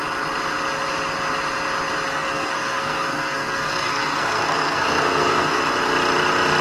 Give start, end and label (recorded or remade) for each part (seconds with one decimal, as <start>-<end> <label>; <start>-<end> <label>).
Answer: 0.0-2.1 recorded; 2.1-5.6 remade; 5.6-6.6 recorded